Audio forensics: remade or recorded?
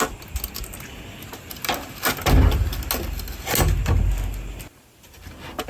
recorded